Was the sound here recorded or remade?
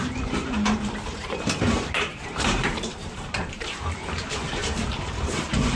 remade